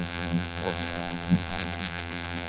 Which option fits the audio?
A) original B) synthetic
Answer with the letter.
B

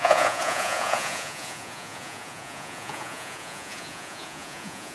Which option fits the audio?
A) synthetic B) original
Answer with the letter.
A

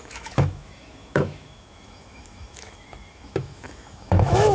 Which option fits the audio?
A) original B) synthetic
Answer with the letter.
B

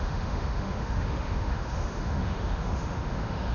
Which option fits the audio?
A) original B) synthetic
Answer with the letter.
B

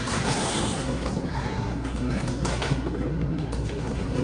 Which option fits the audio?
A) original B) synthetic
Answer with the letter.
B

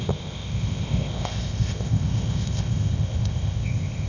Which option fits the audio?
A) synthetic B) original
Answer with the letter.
A